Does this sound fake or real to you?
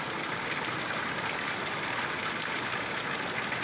real